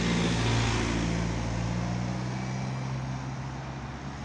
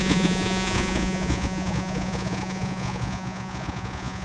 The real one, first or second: first